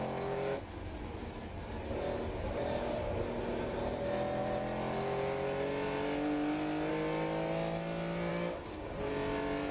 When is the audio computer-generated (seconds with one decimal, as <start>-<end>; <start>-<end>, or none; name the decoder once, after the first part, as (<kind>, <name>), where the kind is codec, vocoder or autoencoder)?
8.3-9.1 (codec, DAC)